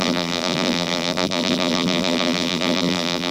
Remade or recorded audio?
remade